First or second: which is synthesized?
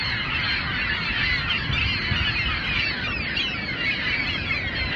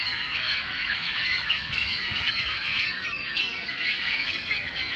second